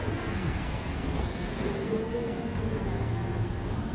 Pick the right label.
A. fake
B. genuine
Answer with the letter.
A